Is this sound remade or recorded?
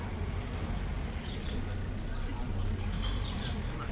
recorded